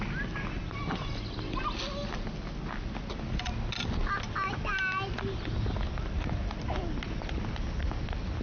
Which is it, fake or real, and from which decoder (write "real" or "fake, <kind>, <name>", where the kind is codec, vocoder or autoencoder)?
real